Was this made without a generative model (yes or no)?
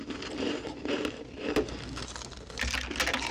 yes